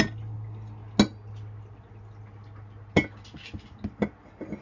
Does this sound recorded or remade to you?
recorded